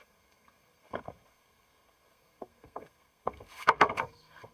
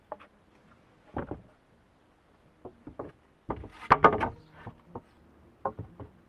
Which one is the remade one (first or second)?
first